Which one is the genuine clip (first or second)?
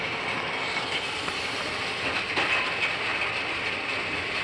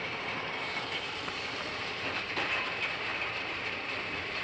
first